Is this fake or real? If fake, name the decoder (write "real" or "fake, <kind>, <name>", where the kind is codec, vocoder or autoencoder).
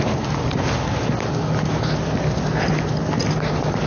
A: real